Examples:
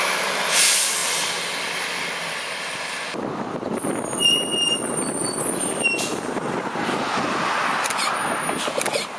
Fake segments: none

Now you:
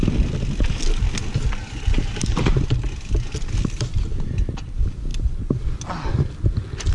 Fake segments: none

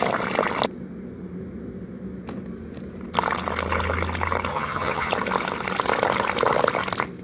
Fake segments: 4.5-5.1 (vocoder, HiFi-GAN)

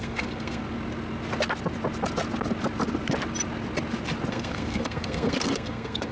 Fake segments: 0.0-0.6 (codec, SNAC); 4.3-6.1

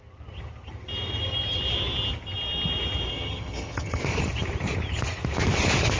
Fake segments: 3.1-4.0 (vocoder, HiFi-GAN)

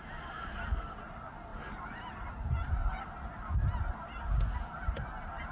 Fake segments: 1.5-2.0 (vocoder, BigVGAN v2)

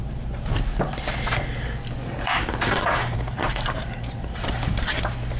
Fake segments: 0.0-0.5 (vocoder, BigVGAN v2); 2.0-5.0